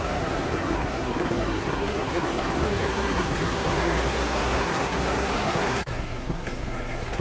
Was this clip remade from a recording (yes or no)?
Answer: yes